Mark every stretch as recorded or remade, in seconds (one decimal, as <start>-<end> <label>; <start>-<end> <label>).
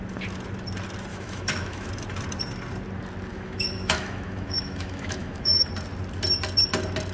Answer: 0.0-1.1 recorded; 1.1-1.9 remade; 1.9-3.3 recorded; 3.3-5.7 remade; 5.7-7.1 recorded